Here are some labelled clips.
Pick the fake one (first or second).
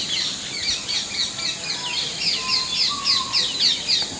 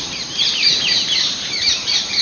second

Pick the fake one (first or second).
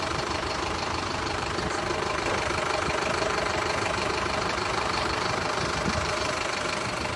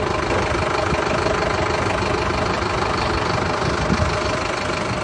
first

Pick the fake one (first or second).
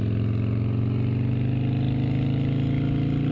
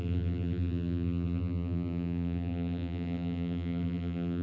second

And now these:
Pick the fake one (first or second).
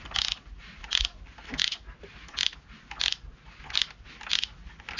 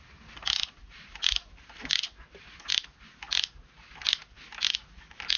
second